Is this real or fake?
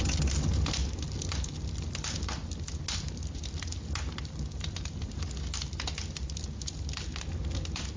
real